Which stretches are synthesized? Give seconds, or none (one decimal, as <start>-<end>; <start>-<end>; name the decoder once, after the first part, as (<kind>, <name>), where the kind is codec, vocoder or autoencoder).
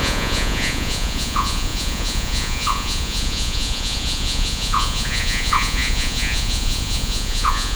0.0-7.8 (vocoder, Vocos)